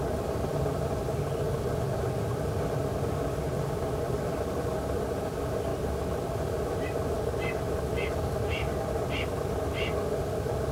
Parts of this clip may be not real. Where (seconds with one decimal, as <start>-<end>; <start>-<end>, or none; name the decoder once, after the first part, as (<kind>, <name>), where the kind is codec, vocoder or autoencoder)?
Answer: 5.7-8.1 (vocoder, BigVGAN v2)